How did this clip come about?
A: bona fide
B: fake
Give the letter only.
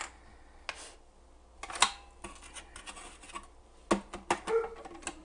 A